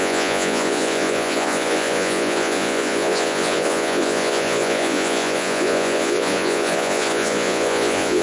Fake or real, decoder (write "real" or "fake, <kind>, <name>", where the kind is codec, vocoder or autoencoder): fake, vocoder, Vocos